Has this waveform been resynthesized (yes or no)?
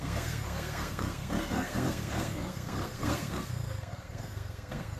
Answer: yes